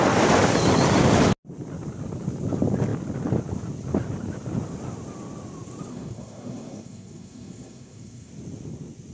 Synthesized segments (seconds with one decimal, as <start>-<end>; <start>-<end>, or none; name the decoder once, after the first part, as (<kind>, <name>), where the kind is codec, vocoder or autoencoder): 5.9-8.3 (codec, SNAC)